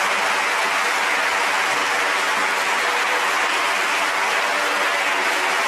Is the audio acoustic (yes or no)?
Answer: yes